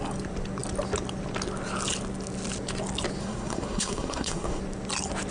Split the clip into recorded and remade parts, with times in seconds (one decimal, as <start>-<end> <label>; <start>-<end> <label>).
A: 0.0-3.2 recorded; 3.2-4.6 remade; 4.6-5.3 recorded